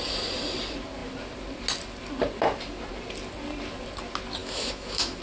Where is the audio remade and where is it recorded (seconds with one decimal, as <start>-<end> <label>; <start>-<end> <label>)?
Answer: 0.0-4.4 recorded; 4.4-5.2 remade